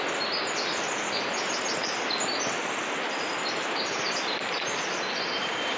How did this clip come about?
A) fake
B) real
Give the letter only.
B